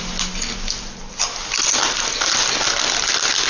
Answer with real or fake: real